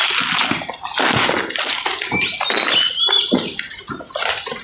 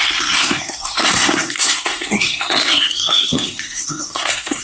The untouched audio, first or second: first